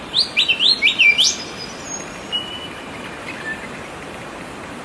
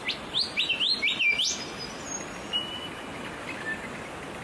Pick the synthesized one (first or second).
first